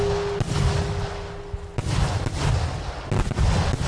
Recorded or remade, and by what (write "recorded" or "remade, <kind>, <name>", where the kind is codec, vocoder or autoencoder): recorded